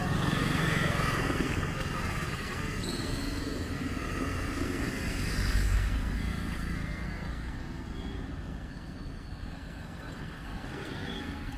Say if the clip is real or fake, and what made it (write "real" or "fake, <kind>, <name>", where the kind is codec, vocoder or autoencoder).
fake, codec, SNAC